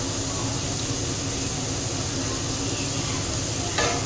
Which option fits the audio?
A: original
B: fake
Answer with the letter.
A